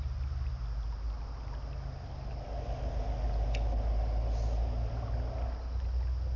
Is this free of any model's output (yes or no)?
yes